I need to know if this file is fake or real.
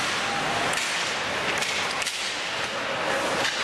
real